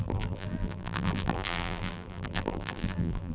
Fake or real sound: fake